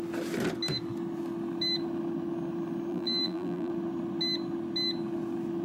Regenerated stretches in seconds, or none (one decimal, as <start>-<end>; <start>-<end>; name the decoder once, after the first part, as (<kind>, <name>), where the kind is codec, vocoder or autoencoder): 2.9-3.7 (vocoder, BigVGAN v2)